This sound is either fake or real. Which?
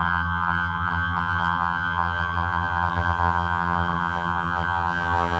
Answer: fake